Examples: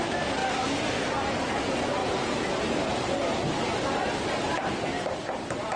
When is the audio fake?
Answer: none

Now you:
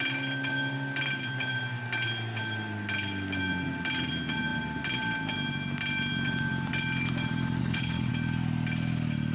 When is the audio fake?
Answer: 7.6-8.1

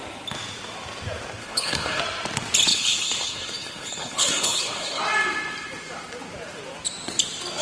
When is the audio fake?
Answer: 1.4-2.0; 2.7-5.0

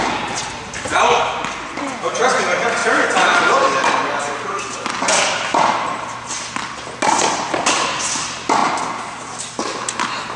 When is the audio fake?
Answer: none

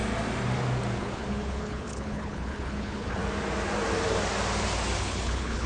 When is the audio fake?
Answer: 1.0-3.2; 5.0-5.7